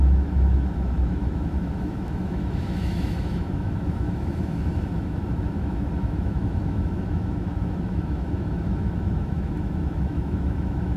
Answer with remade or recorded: remade